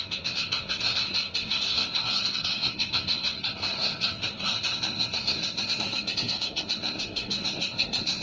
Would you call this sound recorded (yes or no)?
no